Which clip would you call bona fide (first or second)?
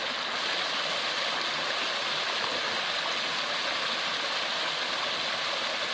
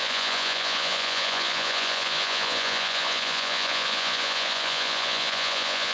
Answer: first